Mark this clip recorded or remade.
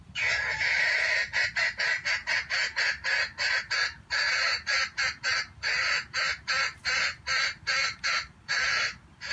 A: recorded